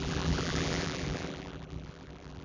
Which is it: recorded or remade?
remade